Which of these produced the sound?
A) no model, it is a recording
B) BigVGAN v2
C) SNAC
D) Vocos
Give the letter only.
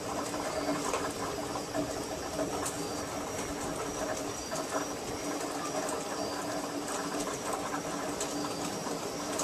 A